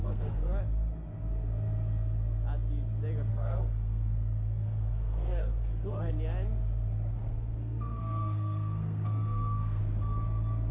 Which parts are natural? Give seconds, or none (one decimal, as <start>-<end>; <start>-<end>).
0.6-3.3; 6.1-7.2; 9.8-10.7